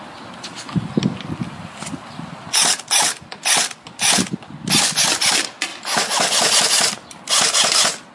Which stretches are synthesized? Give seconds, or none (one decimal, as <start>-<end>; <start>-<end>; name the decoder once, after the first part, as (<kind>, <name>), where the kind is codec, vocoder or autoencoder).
5.7-7.2 (vocoder, BigVGAN v2)